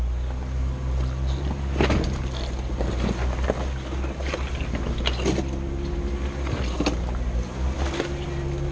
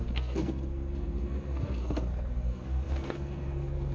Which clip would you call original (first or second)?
first